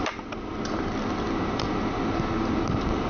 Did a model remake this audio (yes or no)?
no